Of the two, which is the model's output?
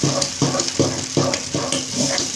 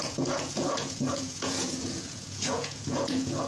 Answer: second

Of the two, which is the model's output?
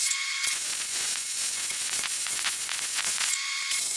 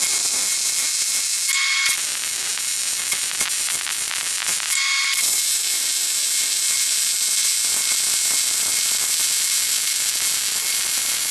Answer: first